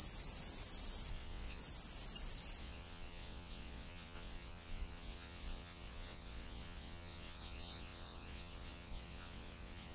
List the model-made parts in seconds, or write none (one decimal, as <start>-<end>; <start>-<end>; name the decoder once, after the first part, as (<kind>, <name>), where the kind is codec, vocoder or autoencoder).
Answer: 1.1-1.6 (vocoder, WaveNeXt); 2.6-9.9